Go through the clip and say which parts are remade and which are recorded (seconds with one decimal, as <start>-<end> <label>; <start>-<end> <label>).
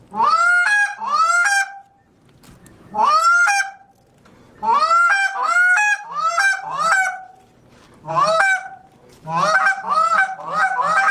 0.0-2.6 recorded; 2.6-3.5 remade; 3.5-5.2 recorded; 5.2-6.3 remade; 6.3-11.1 recorded